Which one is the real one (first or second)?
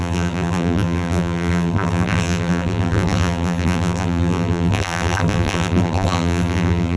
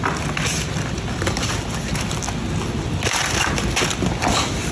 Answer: second